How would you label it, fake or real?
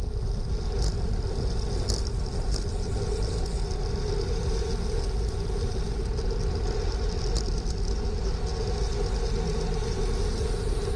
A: real